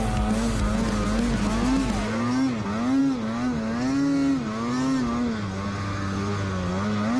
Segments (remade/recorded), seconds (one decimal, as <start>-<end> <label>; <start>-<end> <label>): 0.0-7.2 recorded